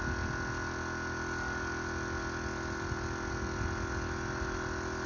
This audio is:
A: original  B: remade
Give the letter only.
A